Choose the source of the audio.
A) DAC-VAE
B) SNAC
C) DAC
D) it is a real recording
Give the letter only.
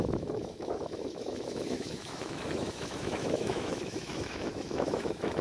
A